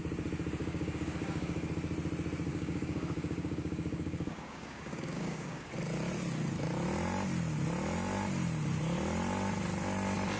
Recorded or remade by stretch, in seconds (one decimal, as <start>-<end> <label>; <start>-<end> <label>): 0.0-0.6 recorded; 0.6-1.7 remade; 1.7-2.5 recorded; 2.5-5.7 remade; 5.7-10.4 recorded